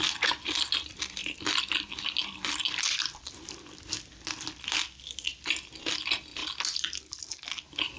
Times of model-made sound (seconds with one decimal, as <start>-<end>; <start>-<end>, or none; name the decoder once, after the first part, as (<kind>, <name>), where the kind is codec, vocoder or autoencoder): none